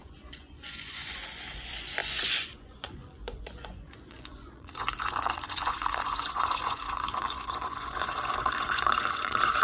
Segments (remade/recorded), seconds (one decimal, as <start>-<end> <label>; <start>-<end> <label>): 0.0-9.6 remade